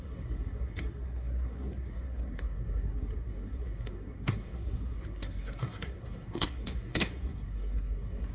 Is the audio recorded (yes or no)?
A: no